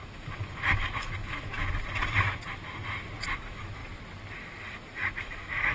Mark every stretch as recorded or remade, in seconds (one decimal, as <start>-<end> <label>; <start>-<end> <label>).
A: 0.0-1.5 remade; 1.5-3.2 recorded; 3.2-3.8 remade; 3.8-4.7 recorded; 4.7-5.7 remade